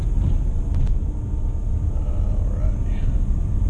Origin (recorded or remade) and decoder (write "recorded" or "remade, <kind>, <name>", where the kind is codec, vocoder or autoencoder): recorded